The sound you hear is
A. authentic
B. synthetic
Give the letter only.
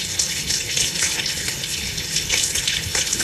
B